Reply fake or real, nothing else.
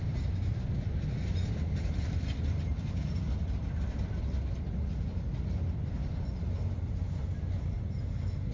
real